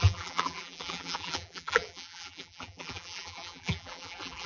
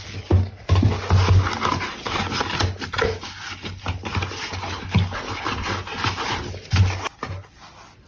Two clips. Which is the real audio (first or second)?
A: second